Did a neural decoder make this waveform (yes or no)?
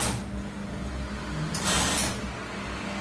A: no